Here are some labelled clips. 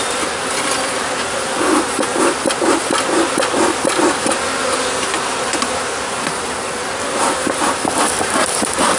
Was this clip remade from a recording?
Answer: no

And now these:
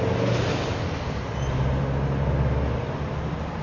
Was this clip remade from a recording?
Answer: no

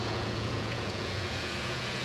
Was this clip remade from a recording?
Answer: yes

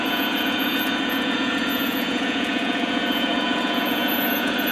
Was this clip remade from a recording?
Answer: yes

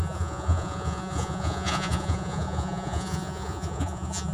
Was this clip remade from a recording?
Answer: yes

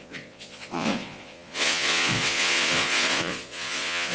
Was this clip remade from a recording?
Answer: yes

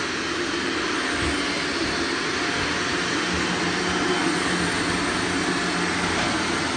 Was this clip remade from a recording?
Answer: no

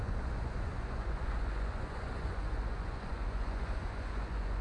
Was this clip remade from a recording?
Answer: yes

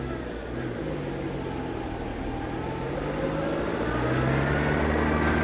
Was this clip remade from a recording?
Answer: no